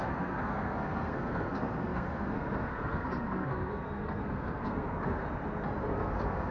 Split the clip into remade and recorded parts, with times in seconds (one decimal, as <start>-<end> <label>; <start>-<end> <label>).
0.0-5.2 remade; 5.2-5.8 recorded; 5.8-6.5 remade

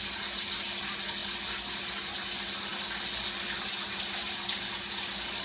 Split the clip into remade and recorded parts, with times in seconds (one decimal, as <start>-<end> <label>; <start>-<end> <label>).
0.0-5.4 recorded

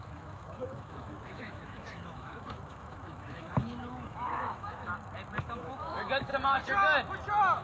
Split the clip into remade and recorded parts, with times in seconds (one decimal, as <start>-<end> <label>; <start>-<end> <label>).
0.0-4.9 remade; 4.9-5.4 recorded; 5.4-6.3 remade; 6.3-7.6 recorded

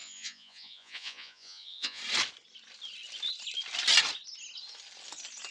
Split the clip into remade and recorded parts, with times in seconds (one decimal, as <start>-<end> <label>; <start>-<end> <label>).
0.0-2.0 remade; 2.0-5.5 recorded

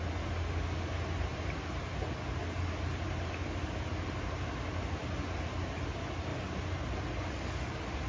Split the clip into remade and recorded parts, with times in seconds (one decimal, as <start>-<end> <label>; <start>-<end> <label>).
0.0-8.1 recorded

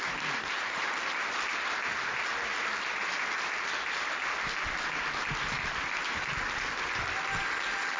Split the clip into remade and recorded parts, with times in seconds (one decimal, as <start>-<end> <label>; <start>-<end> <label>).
0.0-8.0 recorded

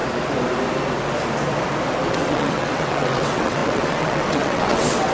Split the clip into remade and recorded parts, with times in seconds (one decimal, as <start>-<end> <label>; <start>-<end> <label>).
0.0-2.1 recorded; 2.1-5.1 remade